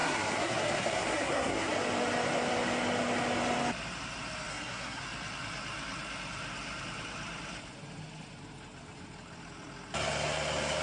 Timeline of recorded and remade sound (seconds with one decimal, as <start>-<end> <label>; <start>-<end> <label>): 0.0-1.7 remade; 1.7-4.5 recorded; 4.5-5.0 remade; 5.0-10.8 recorded